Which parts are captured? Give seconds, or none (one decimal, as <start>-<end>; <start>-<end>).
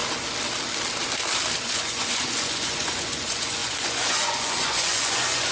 0.0-1.6